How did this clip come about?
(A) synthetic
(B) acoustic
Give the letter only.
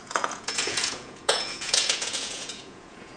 A